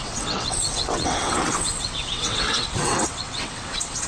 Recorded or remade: remade